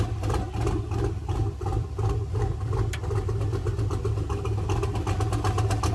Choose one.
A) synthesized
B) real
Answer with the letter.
B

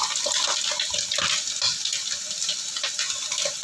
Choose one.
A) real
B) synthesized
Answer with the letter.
A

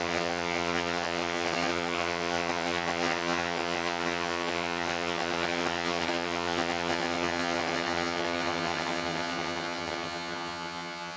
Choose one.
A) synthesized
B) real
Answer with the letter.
A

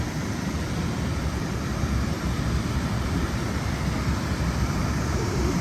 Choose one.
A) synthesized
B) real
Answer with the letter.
B